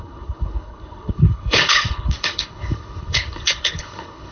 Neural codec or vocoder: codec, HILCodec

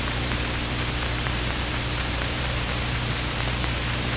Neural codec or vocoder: vocoder, BigVGAN v2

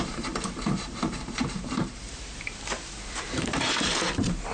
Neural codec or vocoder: vocoder, BigVGAN v2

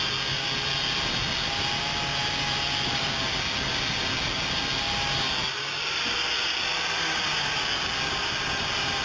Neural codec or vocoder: none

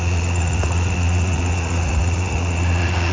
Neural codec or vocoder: vocoder, Vocos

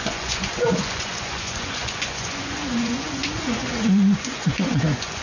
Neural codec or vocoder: vocoder, Vocos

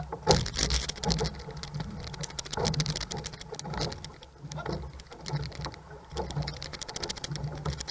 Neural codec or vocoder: none